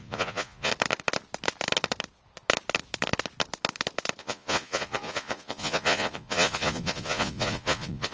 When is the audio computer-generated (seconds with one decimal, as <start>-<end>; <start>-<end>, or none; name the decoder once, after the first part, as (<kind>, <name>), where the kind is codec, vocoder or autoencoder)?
0.0-0.7 (vocoder, Vocos); 4.2-8.1